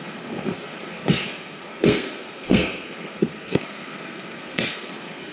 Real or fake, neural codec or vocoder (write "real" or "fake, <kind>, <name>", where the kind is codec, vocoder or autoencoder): fake, codec, SNAC